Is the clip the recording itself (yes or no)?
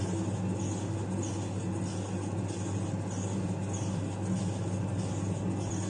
yes